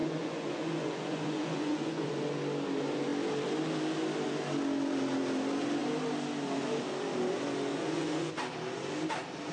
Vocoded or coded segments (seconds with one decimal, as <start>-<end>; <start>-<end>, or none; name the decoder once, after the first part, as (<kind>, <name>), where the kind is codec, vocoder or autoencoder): 0.0-2.2 (vocoder, Vocos); 7.7-8.3